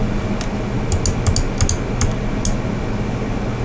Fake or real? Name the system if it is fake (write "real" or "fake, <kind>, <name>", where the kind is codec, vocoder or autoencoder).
real